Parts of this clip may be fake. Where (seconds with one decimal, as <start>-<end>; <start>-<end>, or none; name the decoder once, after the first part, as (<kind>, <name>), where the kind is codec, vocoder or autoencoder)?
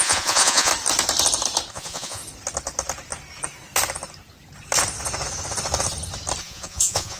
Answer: 0.0-0.7 (vocoder, Vocos); 1.7-2.2; 6.4-7.2